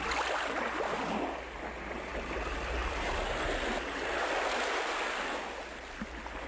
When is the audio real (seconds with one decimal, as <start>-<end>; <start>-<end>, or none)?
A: 0.0-6.5